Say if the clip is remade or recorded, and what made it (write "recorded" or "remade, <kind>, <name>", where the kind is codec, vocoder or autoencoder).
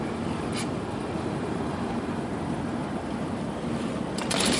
remade, vocoder, BigVGAN v2